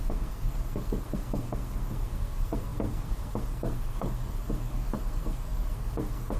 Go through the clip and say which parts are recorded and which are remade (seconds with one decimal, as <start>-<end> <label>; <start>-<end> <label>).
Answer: 0.0-6.4 remade